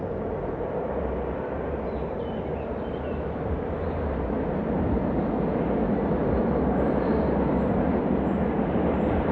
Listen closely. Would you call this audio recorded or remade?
recorded